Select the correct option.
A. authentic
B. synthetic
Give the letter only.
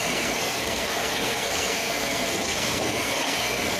B